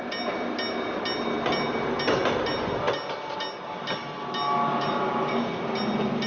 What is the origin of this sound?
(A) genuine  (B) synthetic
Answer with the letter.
A